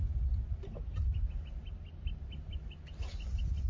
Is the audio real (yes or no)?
yes